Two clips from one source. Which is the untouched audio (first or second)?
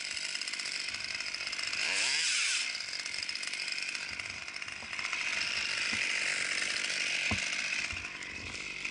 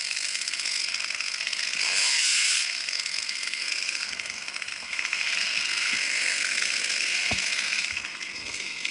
first